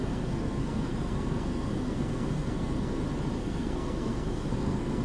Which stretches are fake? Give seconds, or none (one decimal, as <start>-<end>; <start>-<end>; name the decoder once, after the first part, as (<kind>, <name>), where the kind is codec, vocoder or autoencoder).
0.0-3.0 (codec, SNAC); 3.4-5.0